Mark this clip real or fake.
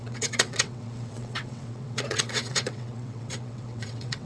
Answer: fake